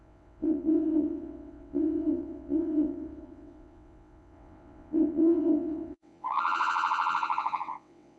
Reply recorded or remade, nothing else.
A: remade